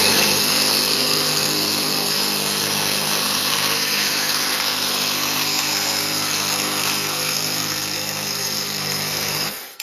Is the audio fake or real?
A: fake